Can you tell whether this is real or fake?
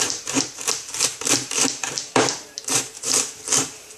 fake